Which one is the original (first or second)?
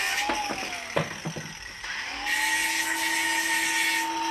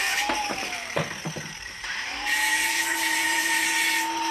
first